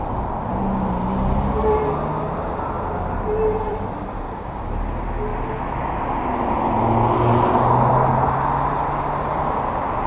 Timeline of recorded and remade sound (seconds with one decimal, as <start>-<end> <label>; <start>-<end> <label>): 0.0-3.7 recorded; 3.7-4.4 remade; 4.4-9.3 recorded; 9.3-10.1 remade